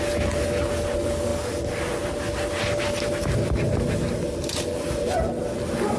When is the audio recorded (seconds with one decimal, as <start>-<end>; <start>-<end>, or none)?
0.0-6.0